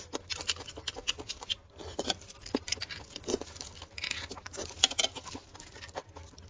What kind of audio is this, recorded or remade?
recorded